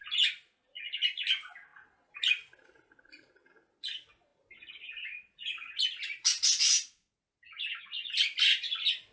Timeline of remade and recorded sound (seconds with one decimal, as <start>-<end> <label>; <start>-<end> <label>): 0.0-9.1 recorded